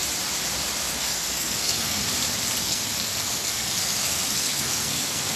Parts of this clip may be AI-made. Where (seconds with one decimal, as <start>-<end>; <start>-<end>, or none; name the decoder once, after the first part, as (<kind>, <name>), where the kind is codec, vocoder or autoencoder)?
0.8-2.0 (codec, SNAC); 2.6-5.4